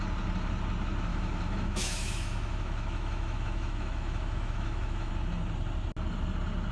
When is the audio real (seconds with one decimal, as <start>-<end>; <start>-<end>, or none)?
0.0-1.1; 5.1-6.7

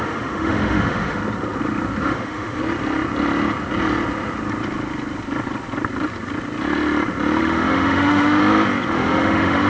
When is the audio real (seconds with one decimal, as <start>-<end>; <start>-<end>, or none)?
1.2-2.0; 2.6-7.4; 8.4-8.9

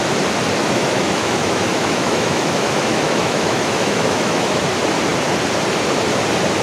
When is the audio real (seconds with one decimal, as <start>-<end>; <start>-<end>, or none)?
0.0-0.6; 4.6-6.6

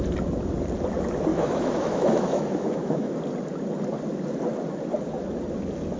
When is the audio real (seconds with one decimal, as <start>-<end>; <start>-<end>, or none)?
0.0-1.3; 3.1-6.0

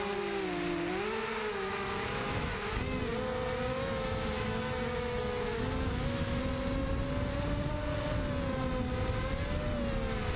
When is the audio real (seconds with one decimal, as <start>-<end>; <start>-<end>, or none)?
0.0-1.5; 2.8-3.7; 6.4-10.4

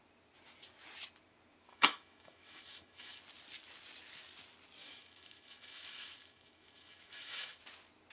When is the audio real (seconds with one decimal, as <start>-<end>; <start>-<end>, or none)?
0.0-1.7; 3.2-4.8; 7.6-8.1